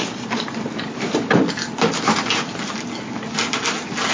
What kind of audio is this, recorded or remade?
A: recorded